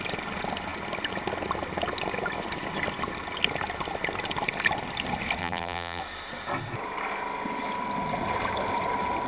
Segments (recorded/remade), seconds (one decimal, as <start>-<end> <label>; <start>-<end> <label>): 0.0-5.4 recorded; 5.4-6.0 remade; 6.0-9.3 recorded